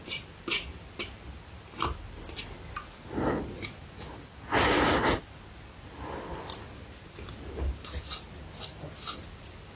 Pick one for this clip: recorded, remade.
recorded